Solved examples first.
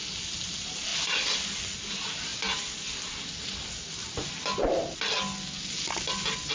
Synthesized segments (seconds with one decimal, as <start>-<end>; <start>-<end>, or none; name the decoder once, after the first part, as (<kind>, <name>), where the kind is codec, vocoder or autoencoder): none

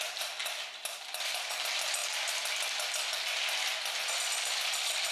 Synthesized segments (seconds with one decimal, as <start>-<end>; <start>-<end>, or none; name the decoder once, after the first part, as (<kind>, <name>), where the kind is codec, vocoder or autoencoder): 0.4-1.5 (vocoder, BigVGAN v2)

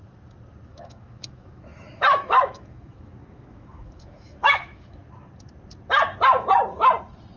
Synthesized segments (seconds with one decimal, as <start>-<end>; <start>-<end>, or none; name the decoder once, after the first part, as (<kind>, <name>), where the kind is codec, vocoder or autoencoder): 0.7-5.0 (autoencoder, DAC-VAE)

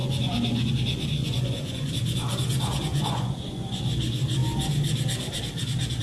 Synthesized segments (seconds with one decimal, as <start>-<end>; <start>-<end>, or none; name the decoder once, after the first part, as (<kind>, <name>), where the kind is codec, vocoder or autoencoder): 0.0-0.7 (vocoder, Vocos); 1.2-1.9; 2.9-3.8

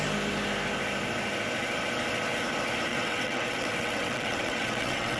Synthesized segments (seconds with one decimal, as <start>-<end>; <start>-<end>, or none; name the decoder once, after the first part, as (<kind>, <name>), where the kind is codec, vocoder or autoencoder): 2.9-5.2 (vocoder, WaveNeXt)

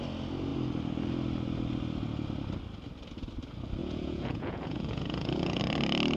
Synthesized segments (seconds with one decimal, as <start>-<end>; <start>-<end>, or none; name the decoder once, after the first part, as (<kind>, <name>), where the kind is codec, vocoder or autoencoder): 3.8-5.6 (vocoder, Vocos)

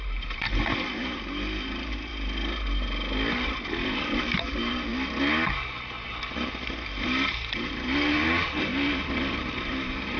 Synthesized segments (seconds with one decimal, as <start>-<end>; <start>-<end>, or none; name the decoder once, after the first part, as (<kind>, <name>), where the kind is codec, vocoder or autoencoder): 0.0-2.1 (vocoder, BigVGAN v2); 4.2-4.9; 5.5-10.2